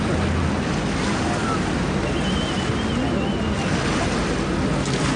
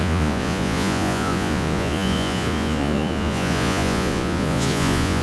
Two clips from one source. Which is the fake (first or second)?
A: second